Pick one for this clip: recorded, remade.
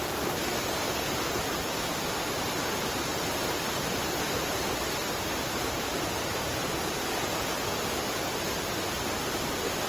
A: recorded